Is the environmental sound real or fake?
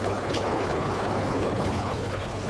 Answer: fake